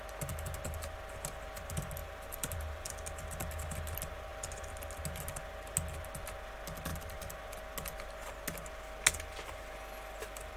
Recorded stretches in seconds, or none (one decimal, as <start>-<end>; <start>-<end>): 0.0-2.0; 2.9-10.6